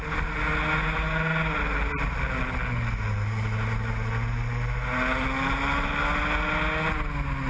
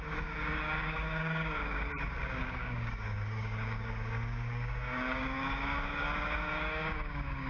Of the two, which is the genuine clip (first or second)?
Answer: first